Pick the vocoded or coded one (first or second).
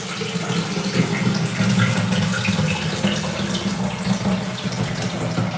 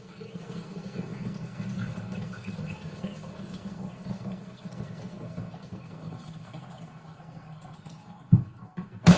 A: second